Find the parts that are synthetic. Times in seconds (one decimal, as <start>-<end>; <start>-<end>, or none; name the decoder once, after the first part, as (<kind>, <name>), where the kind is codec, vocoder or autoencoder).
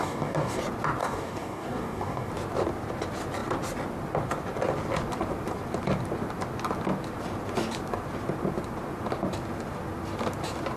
0.0-0.6 (codec, DAC); 1.0-2.3